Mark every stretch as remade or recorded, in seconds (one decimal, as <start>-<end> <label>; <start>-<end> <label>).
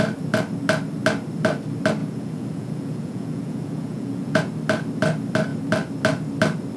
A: 0.0-2.0 recorded; 2.0-4.5 remade; 4.5-6.8 recorded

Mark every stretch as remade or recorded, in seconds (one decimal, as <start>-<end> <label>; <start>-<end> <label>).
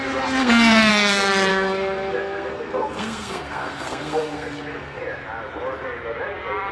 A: 0.0-0.4 recorded; 0.4-0.9 remade; 0.9-1.5 recorded; 1.5-5.0 remade; 5.0-6.7 recorded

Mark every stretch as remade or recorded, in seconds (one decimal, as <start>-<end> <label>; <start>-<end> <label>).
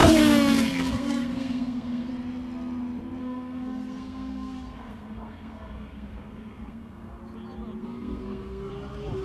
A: 0.0-2.1 remade; 2.1-3.2 recorded; 3.2-7.2 remade; 7.2-7.8 recorded; 7.8-8.7 remade; 8.7-9.2 recorded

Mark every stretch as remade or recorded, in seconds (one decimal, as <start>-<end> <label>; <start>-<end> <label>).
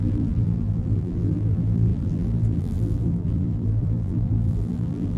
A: 0.0-5.2 remade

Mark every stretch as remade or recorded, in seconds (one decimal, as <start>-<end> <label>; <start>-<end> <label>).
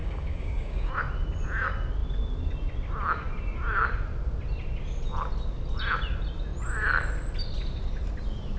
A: 0.0-0.9 remade; 0.9-8.6 recorded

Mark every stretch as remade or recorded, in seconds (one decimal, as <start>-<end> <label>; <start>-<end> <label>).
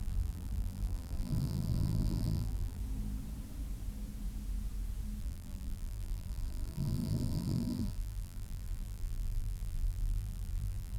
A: 0.0-2.8 remade; 2.8-5.2 recorded; 5.2-11.0 remade